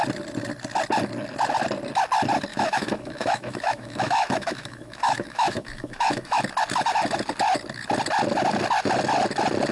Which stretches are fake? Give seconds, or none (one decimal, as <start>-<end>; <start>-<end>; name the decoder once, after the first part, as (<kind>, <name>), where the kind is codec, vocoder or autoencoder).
2.5-6.4 (autoencoder, DAC-VAE)